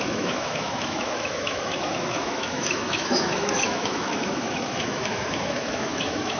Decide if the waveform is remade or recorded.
remade